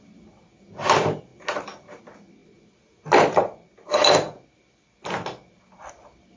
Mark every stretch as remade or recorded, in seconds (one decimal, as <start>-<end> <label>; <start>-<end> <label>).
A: 0.0-6.4 recorded